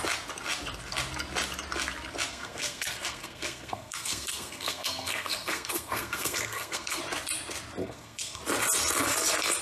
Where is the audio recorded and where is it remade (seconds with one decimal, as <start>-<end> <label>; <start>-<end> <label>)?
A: 0.0-2.3 recorded; 2.3-7.0 remade; 7.0-7.8 recorded; 7.8-8.4 remade; 8.4-9.6 recorded